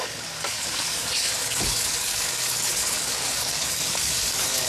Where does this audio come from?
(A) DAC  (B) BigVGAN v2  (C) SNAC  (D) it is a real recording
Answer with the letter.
A